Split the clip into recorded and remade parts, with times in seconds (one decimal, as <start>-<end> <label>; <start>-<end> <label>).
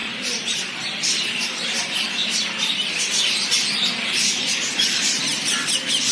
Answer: 0.0-0.8 remade; 0.8-6.1 recorded